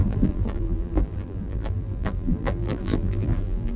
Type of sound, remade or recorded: remade